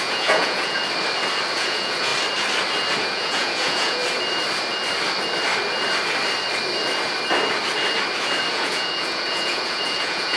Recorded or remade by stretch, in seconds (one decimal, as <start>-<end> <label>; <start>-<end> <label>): 0.0-0.8 remade; 0.8-1.5 recorded; 1.5-2.1 remade; 2.1-3.0 recorded; 3.0-4.0 remade; 4.0-8.5 recorded; 8.5-10.4 remade